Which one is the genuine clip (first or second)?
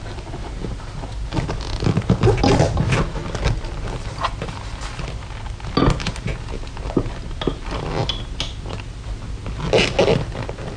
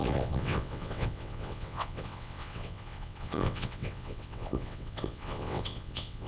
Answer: first